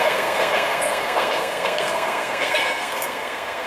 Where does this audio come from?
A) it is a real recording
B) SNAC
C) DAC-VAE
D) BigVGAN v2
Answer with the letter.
B